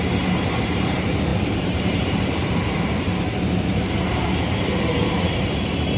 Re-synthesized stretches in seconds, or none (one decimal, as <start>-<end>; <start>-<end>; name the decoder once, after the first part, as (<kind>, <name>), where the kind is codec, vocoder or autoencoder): 0.0-6.0 (vocoder, BigVGAN v2)